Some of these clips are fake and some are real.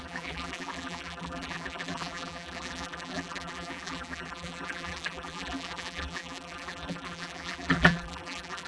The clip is fake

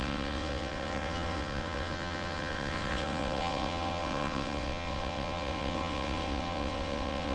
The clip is fake